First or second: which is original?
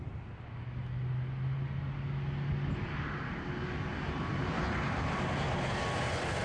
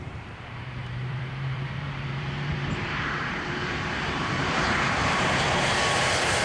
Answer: first